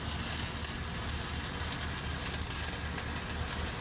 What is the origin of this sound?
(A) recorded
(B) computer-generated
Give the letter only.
A